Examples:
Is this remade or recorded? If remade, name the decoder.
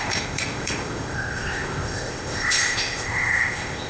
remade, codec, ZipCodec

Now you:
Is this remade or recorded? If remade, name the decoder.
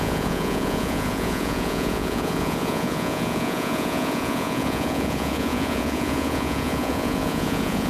remade, vocoder, Vocos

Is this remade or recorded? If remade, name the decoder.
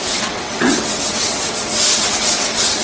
remade, vocoder, WaveNeXt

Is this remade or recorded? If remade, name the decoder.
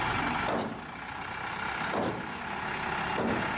recorded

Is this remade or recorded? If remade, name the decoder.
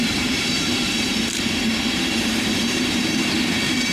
remade, vocoder, BigVGAN v2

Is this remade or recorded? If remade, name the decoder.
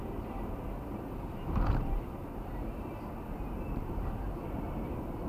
remade, vocoder, BigVGAN v2